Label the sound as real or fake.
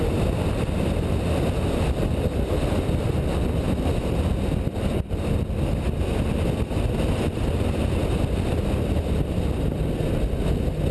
real